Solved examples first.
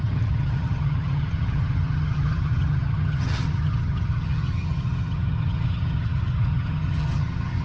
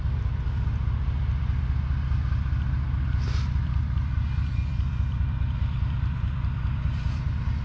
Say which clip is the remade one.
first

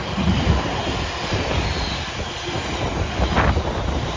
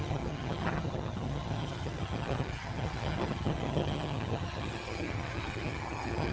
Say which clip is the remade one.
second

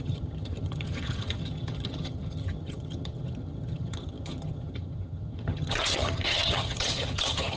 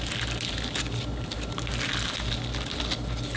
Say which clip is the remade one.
first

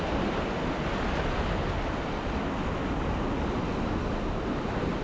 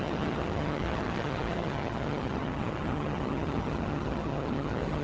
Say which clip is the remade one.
second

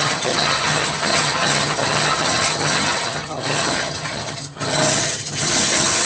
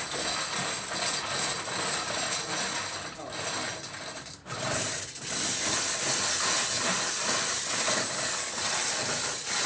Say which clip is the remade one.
first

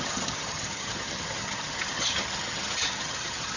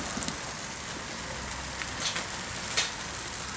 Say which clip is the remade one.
first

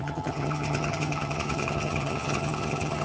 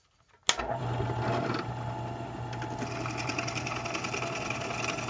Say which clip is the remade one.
first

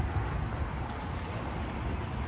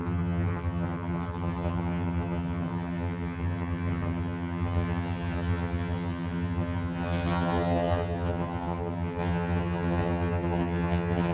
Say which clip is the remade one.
second